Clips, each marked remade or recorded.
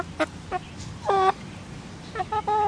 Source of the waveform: recorded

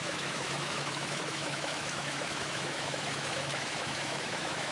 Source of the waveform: remade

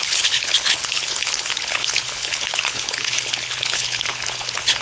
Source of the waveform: remade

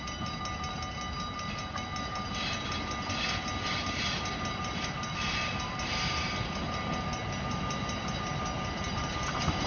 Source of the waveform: recorded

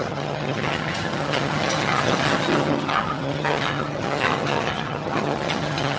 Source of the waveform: remade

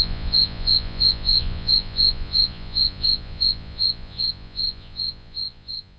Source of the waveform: remade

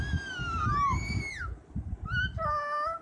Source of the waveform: recorded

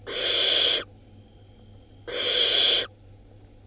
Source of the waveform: recorded